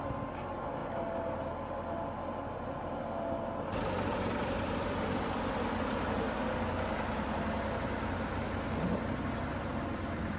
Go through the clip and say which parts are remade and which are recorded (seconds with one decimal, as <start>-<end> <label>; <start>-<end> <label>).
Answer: 0.0-10.4 recorded